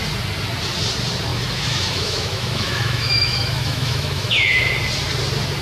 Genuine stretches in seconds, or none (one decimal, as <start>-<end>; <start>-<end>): 0.0-1.3; 4.7-5.6